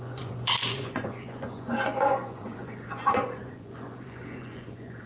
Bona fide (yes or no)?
no